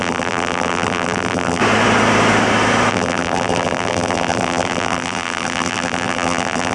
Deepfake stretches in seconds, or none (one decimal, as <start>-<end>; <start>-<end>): 0.0-1.6; 2.9-6.7